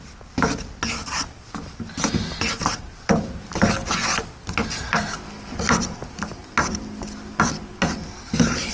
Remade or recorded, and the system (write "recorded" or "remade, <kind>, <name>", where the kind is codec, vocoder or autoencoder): recorded